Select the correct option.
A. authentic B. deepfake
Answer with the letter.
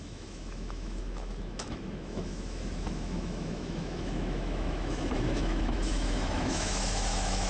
B